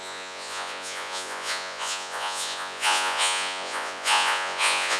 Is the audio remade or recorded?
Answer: remade